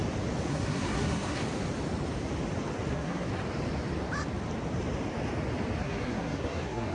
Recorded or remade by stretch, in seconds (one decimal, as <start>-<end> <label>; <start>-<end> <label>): 0.0-0.5 recorded; 0.5-1.4 remade; 1.4-2.9 recorded; 2.9-3.3 remade; 3.3-5.8 recorded; 5.8-6.9 remade